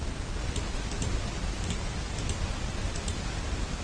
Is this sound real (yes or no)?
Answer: yes